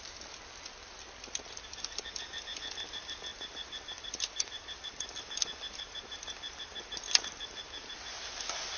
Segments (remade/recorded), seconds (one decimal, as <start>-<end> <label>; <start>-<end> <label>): 0.0-3.3 recorded; 3.3-5.2 remade; 5.2-8.8 recorded